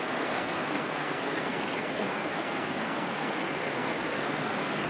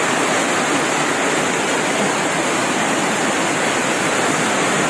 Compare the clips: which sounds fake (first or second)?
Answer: first